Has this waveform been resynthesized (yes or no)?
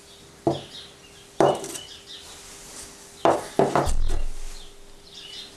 no